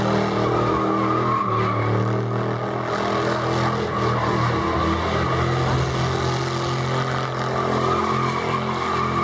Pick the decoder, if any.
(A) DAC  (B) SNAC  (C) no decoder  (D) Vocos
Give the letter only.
C